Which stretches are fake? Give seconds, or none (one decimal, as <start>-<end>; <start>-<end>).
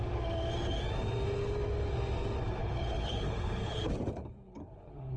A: 2.6-3.8; 4.2-5.2